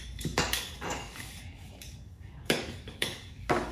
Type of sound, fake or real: fake